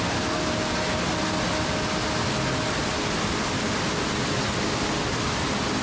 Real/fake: real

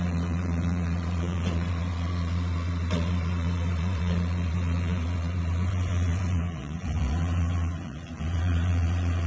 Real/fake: fake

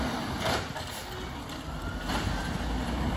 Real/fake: real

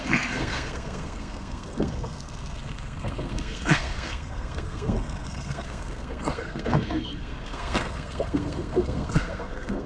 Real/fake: fake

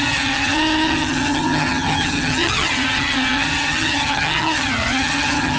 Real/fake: fake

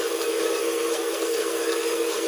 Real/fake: fake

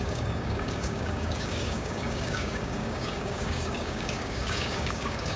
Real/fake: fake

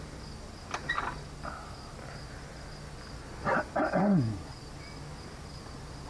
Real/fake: real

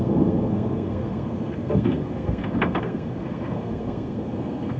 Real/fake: fake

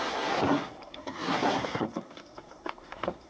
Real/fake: fake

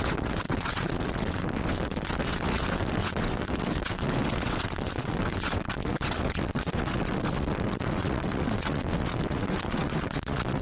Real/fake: fake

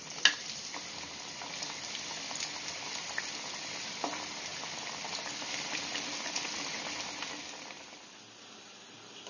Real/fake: real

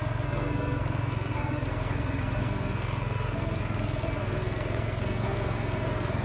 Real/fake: fake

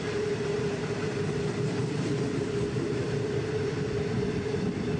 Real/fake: real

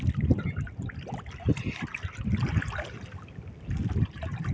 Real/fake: real